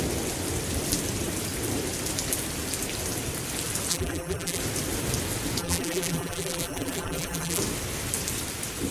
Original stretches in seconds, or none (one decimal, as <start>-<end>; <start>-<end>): 0.0-3.9; 4.6-5.6; 7.6-8.9